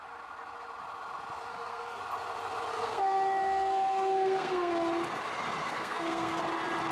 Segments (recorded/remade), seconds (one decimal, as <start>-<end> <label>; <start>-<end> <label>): 0.0-1.5 recorded; 1.5-2.0 remade; 2.0-2.7 recorded; 2.7-4.7 remade; 4.7-5.6 recorded; 5.6-6.4 remade; 6.4-6.9 recorded

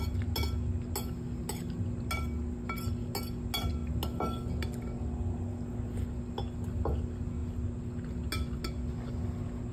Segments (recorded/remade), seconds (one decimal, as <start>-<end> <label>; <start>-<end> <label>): 0.0-9.7 recorded

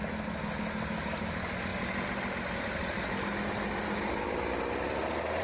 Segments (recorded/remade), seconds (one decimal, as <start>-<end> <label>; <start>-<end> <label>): 0.0-5.4 recorded